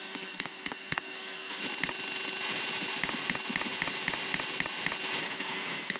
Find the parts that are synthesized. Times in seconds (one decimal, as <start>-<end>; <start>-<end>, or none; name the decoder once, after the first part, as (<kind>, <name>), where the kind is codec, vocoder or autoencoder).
0.0-1.6 (codec, SNAC); 5.2-6.0